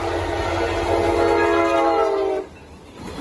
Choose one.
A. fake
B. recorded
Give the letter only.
B